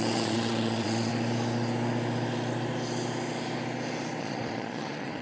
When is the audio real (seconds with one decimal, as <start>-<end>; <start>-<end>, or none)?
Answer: 1.1-4.2